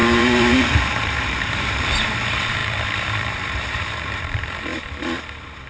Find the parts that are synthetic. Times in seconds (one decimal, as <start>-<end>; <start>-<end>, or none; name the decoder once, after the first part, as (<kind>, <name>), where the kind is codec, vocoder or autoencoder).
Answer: 0.0-4.7 (vocoder, BigVGAN v2)